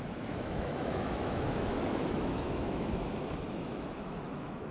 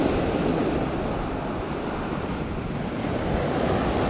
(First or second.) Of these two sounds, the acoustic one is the second